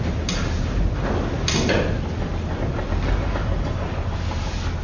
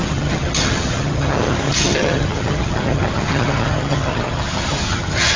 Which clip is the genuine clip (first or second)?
first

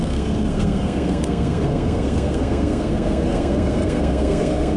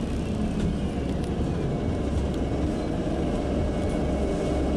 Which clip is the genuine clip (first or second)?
second